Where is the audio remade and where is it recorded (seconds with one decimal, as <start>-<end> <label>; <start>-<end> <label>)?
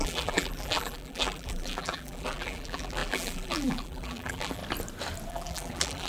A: 0.0-4.6 remade; 4.6-5.3 recorded; 5.3-6.1 remade